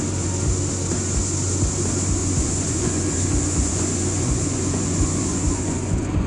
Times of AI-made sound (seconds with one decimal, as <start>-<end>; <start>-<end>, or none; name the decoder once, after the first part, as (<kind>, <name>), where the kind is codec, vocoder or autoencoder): 2.2-6.3 (vocoder, Vocos)